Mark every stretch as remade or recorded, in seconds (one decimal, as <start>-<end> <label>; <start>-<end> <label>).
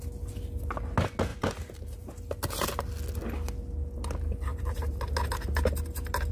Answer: 0.0-1.3 recorded; 1.3-2.2 remade; 2.2-4.5 recorded; 4.5-5.0 remade; 5.0-6.3 recorded